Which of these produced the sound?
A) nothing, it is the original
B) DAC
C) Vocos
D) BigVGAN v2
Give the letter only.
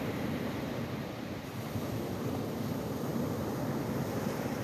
D